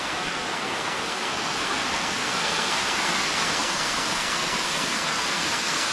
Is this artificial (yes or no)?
yes